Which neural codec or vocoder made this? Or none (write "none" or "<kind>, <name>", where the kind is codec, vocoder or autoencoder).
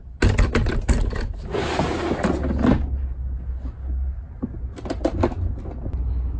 none